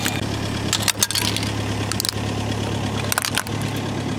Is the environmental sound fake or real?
real